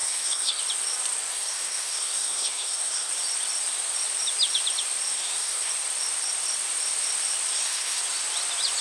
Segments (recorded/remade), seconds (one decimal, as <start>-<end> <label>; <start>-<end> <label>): 0.0-0.6 remade; 0.6-1.3 recorded; 1.3-3.1 remade; 3.1-5.1 recorded; 5.1-5.7 remade; 5.7-7.5 recorded; 7.5-8.0 remade; 8.0-8.8 recorded